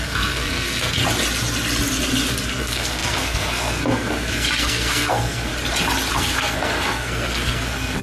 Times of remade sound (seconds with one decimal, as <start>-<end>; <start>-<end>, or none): 0.0-1.0; 2.5-5.5; 6.1-8.0